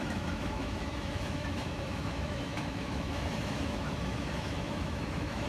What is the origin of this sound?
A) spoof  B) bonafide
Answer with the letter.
A